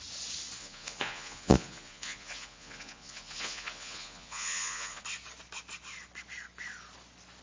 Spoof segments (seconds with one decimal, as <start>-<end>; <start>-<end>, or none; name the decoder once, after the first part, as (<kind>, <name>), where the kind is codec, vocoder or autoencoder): 0.6-5.0 (vocoder, Vocos)